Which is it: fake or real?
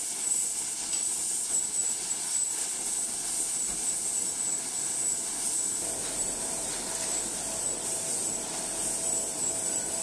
real